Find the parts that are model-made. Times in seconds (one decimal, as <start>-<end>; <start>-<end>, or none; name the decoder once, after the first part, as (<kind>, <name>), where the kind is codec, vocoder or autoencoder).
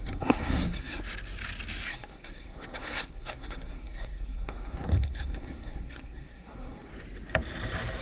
0.0-1.0 (codec, SNAC); 1.9-6.9